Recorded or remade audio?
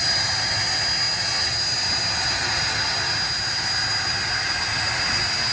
recorded